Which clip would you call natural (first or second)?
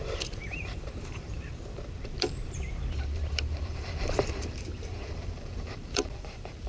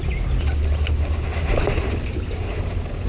second